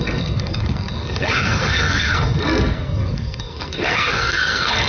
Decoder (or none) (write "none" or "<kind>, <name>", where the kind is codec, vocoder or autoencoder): codec, SNAC